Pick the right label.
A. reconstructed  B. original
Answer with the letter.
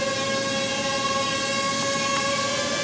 B